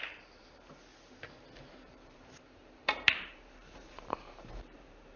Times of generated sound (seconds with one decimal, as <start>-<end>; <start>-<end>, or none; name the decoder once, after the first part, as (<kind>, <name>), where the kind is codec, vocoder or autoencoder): 0.0-0.9 (vocoder, BigVGAN v2); 1.7-5.2